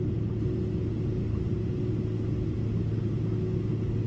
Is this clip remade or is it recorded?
recorded